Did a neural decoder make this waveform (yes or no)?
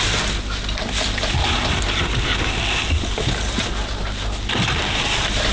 no